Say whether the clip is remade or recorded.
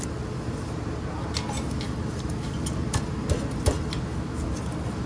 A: recorded